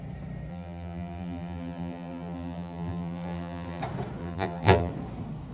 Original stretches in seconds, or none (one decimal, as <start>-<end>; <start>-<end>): 0.0-0.5; 3.8-4.2; 4.9-5.5